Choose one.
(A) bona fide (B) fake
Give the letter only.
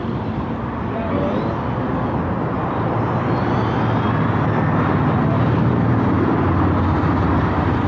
B